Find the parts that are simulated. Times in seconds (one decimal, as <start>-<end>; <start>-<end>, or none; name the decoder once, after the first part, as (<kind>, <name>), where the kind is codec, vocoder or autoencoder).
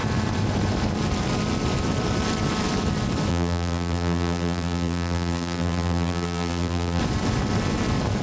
3.3-7.0 (vocoder, BigVGAN v2)